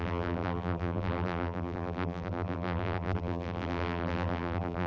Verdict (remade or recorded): remade